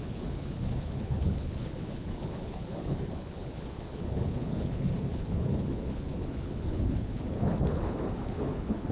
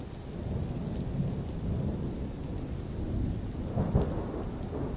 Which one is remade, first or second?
first